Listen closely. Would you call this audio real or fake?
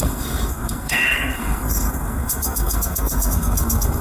fake